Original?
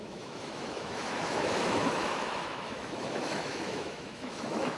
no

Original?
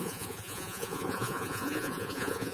no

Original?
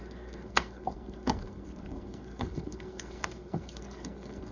no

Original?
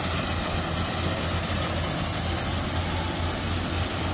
yes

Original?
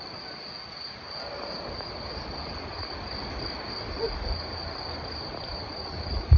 yes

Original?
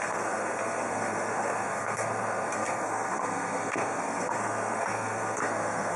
no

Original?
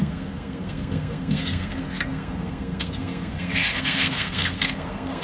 no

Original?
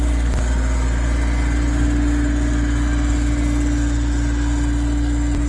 yes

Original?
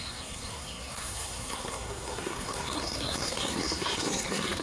no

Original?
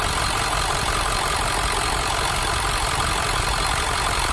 yes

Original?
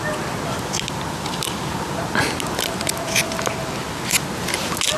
yes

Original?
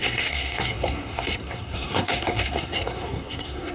no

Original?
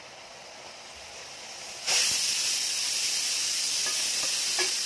yes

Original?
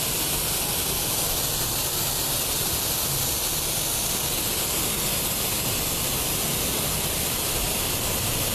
yes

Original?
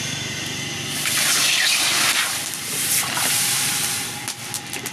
no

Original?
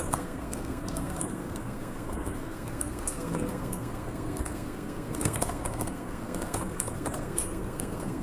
no